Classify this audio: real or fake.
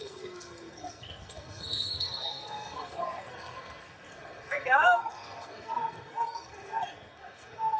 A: fake